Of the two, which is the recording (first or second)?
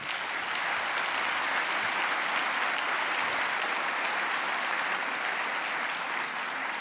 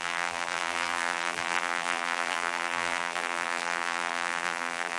first